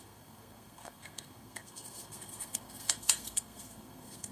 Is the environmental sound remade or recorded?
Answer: remade